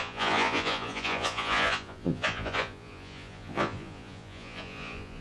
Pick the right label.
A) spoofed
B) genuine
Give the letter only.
A